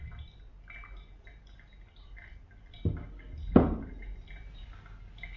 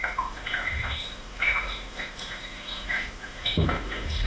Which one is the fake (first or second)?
second